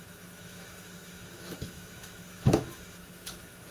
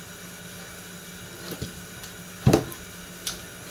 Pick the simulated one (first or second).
first